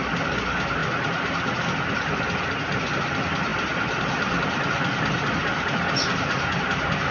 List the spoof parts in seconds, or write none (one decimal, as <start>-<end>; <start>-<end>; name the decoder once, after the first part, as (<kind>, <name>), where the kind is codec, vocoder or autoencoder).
none